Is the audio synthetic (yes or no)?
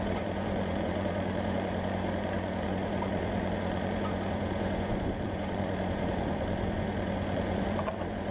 yes